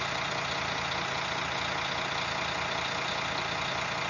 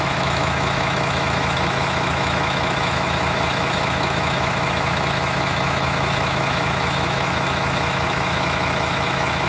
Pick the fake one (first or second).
second